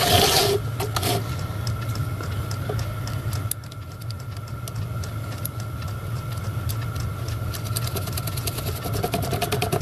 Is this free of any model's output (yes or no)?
yes